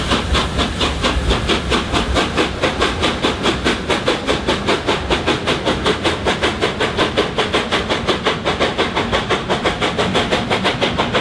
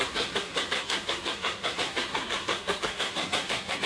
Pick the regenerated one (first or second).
second